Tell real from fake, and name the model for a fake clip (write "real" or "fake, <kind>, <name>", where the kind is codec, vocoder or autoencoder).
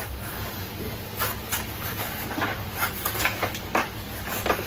fake, codec, DAC